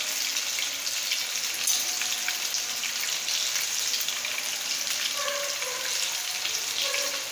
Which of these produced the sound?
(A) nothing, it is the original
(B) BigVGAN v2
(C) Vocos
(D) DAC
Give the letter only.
A